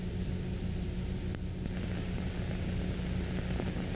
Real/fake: real